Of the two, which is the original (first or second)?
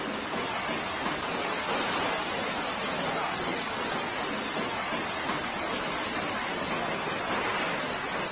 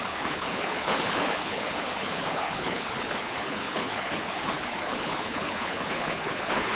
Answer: first